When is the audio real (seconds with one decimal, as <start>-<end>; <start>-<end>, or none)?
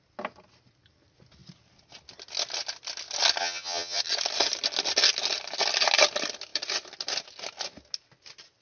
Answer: 0.0-3.4; 4.0-8.6